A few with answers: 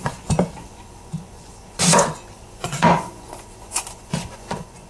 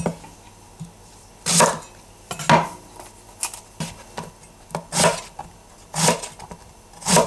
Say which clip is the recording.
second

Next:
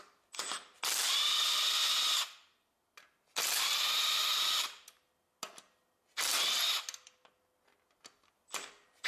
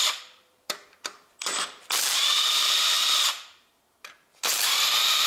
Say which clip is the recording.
first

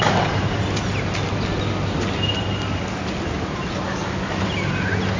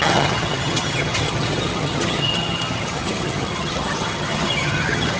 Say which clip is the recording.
first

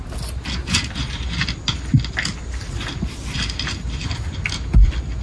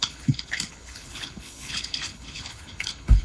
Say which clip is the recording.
first